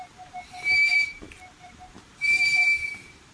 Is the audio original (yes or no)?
no